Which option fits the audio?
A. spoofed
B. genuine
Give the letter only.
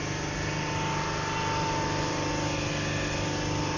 B